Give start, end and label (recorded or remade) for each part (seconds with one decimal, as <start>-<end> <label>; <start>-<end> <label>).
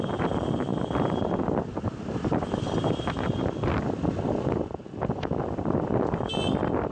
0.0-6.9 recorded